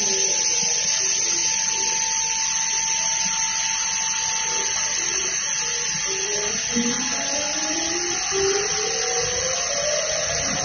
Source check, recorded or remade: recorded